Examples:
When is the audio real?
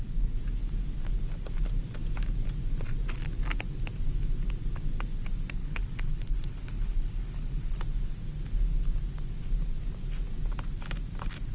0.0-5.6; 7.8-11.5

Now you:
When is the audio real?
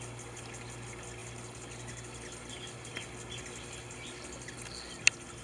0.0-5.4